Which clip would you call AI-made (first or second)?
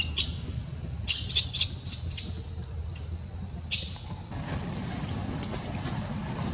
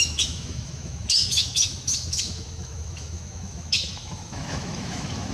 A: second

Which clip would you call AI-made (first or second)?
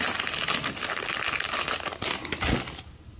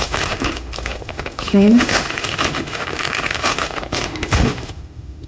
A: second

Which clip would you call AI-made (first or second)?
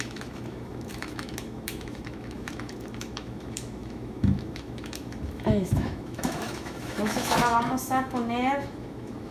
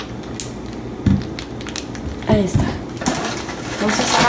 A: first